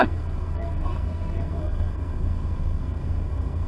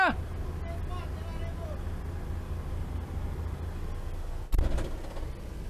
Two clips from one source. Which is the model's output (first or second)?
first